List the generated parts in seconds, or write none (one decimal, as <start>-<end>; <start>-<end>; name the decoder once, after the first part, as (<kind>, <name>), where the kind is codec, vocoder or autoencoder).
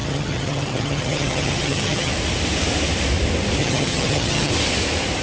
0.0-2.1 (vocoder, HiFi-GAN); 3.6-4.5